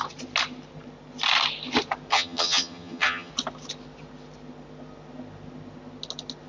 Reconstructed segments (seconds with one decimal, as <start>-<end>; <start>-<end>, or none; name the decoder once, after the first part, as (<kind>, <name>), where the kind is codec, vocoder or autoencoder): 2.1-3.3 (vocoder, HiFi-GAN)